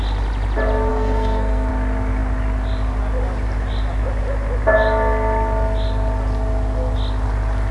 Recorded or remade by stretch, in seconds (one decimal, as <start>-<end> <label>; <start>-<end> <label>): 0.0-0.9 recorded; 0.9-1.7 remade; 1.7-7.7 recorded